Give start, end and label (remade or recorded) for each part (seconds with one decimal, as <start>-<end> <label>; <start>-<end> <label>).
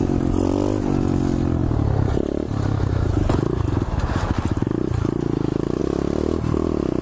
0.0-7.0 recorded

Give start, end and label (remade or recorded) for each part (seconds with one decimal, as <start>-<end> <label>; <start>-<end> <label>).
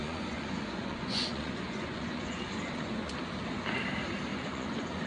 0.0-3.1 remade; 3.1-4.3 recorded; 4.3-5.1 remade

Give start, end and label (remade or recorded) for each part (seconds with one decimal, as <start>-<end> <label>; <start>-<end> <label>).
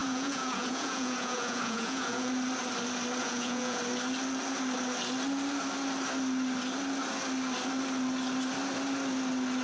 0.0-2.3 remade; 2.3-3.2 recorded; 3.2-3.8 remade; 3.8-9.6 recorded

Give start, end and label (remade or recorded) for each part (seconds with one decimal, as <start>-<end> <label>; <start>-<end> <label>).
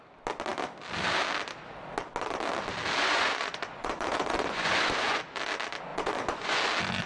0.0-3.0 recorded; 3.0-5.2 remade; 5.2-5.9 recorded; 5.9-6.6 remade; 6.6-7.1 recorded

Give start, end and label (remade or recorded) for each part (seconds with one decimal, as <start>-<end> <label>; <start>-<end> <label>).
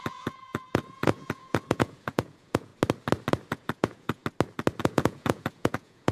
0.0-2.7 remade; 2.7-3.5 recorded; 3.5-4.2 remade; 4.2-4.8 recorded; 4.8-6.1 remade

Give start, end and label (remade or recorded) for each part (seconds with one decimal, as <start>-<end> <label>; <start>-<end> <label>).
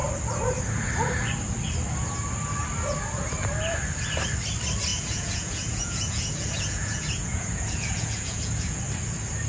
0.0-4.9 recorded; 4.9-8.8 remade; 8.8-9.5 recorded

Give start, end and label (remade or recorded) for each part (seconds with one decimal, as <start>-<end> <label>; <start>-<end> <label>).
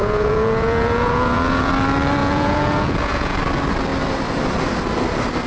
0.0-1.7 remade; 1.7-2.2 recorded; 2.2-3.4 remade; 3.4-5.5 recorded